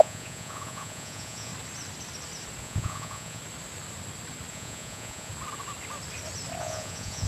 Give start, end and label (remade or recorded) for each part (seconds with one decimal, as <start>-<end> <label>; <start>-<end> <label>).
0.0-1.5 remade; 1.5-2.6 recorded; 2.6-3.4 remade; 3.4-4.5 recorded; 4.5-5.3 remade; 5.3-6.6 recorded; 6.6-7.3 remade